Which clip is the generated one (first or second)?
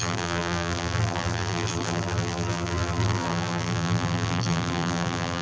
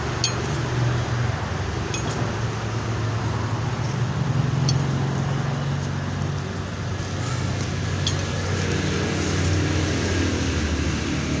first